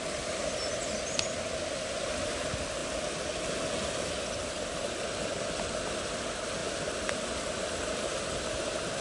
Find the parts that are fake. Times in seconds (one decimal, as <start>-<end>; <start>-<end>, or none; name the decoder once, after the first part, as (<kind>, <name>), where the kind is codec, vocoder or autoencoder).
none